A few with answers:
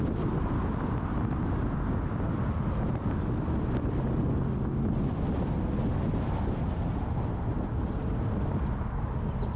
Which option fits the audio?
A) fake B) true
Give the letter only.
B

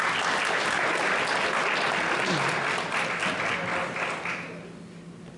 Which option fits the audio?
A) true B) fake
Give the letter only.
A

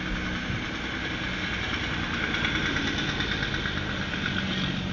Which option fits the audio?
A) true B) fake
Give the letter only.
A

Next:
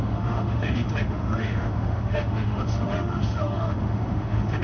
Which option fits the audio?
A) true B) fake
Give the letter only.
B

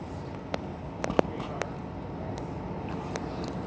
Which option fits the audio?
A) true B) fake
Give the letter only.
A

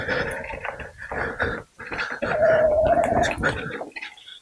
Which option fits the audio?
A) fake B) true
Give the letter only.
B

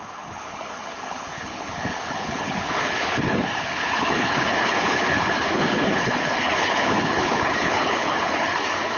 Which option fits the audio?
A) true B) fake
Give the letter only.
B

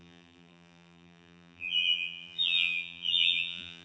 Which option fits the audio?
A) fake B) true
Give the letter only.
A